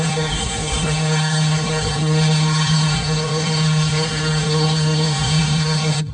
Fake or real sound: fake